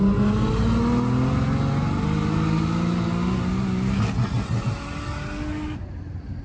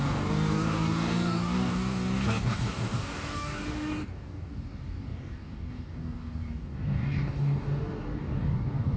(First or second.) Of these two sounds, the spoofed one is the second